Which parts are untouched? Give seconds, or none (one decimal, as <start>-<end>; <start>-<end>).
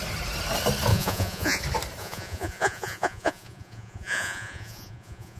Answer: 0.0-0.9; 1.6-2.0